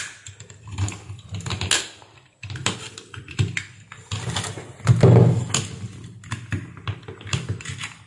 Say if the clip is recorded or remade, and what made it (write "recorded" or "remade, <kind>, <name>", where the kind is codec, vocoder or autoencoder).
recorded